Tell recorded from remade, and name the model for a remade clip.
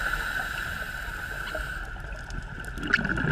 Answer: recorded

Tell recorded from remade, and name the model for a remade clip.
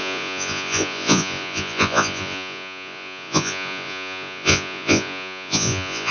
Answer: remade, vocoder, Vocos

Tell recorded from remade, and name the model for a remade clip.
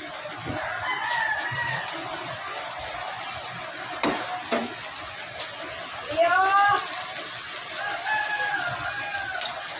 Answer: recorded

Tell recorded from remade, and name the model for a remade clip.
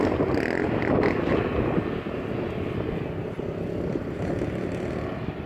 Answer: recorded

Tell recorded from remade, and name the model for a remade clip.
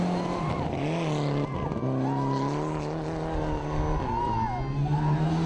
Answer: recorded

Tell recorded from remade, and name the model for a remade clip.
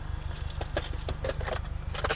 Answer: recorded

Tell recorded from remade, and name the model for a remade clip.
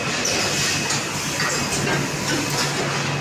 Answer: recorded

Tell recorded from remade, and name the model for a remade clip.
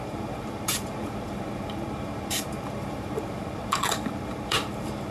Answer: remade, vocoder, BigVGAN v2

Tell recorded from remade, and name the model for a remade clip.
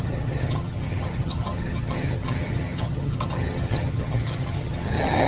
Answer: remade, vocoder, HiFi-GAN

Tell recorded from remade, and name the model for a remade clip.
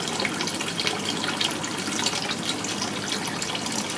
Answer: recorded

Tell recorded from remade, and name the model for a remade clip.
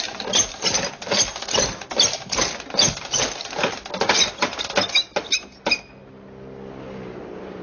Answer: recorded